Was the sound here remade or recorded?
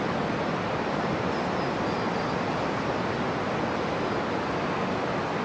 recorded